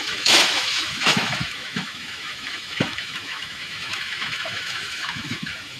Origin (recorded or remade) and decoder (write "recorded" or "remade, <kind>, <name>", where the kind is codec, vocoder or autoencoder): remade, autoencoder, DAC-VAE